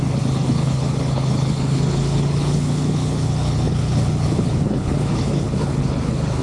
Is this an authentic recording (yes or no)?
no